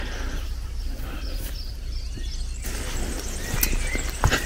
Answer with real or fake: real